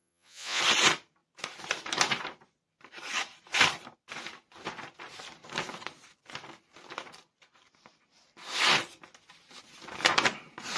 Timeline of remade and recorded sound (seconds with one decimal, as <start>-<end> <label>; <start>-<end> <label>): 0.0-0.6 remade; 0.6-10.8 recorded